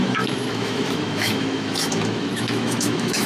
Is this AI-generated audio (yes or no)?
yes